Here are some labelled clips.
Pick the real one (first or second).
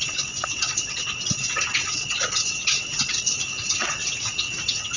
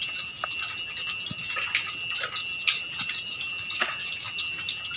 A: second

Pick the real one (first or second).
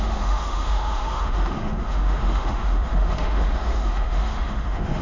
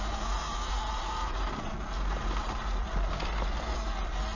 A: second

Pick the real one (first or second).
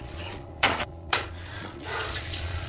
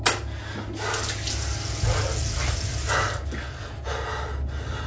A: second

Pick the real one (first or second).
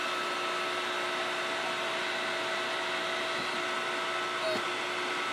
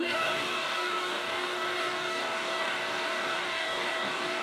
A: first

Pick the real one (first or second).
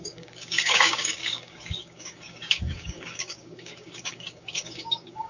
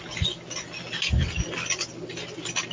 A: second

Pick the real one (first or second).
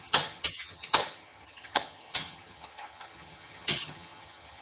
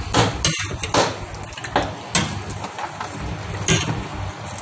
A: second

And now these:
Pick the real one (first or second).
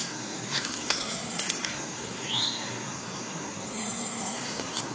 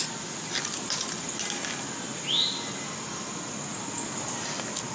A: second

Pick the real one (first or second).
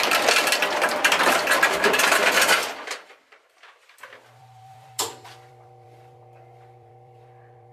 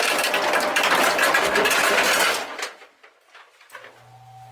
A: second